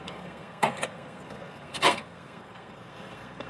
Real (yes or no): no